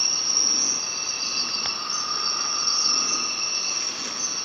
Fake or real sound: real